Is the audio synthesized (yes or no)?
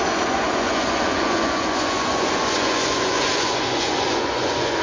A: yes